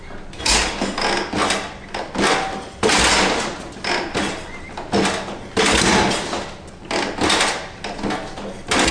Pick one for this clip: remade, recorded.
recorded